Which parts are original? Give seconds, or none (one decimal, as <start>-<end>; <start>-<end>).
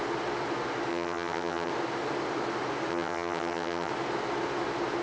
0.0-0.9; 1.7-2.9; 3.9-5.0